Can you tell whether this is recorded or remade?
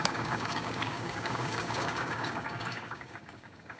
remade